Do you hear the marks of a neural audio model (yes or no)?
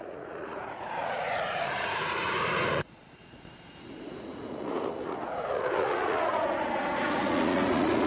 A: yes